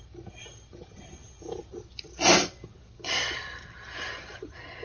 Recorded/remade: recorded